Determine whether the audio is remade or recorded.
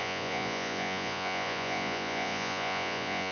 remade